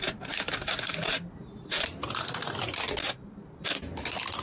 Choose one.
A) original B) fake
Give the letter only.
A